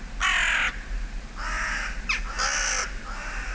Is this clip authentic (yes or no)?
yes